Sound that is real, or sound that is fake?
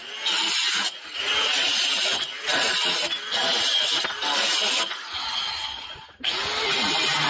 real